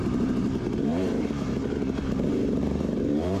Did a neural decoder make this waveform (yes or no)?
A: yes